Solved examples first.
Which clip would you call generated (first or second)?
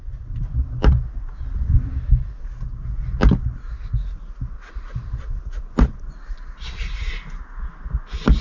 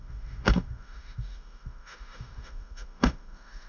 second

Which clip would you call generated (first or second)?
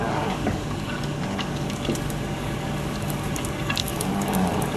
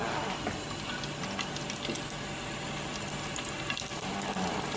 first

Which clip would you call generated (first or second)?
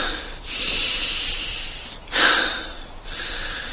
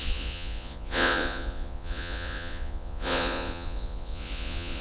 second